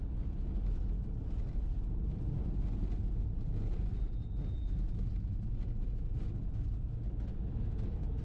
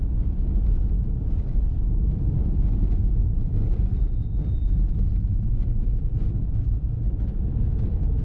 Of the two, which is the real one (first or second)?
first